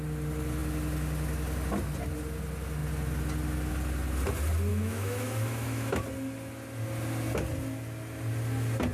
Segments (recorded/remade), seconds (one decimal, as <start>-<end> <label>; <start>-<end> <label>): 0.0-4.7 recorded; 4.7-6.0 remade; 6.0-8.9 recorded

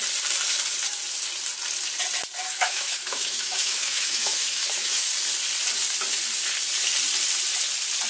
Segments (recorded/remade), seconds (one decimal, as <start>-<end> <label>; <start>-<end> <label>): 0.0-2.5 recorded; 2.5-5.1 remade; 5.1-8.1 recorded